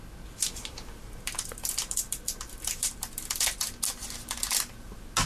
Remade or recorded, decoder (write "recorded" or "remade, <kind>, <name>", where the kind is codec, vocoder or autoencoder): recorded